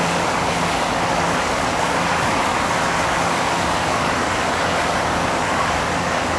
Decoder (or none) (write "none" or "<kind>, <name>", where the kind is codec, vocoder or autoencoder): codec, DAC